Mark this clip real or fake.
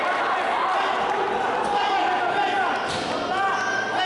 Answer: real